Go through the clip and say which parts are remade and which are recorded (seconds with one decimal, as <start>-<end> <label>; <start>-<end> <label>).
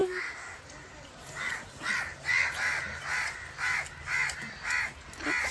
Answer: 0.0-0.6 remade; 0.6-5.5 recorded